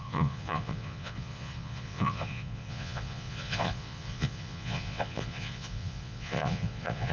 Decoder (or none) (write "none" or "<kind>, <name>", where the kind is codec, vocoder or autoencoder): vocoder, Vocos